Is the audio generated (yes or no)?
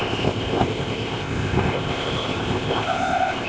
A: yes